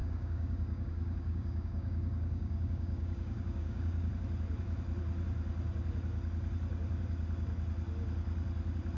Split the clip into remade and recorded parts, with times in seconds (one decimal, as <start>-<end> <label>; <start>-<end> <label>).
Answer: 0.0-4.1 remade; 4.1-9.0 recorded